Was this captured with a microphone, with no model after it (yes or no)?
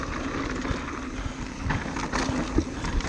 yes